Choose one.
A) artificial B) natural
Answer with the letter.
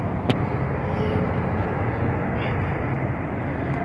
B